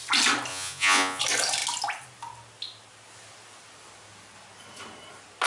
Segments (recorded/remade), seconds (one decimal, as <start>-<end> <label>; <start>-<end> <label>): 0.0-0.5 recorded; 0.5-1.2 remade; 1.2-5.5 recorded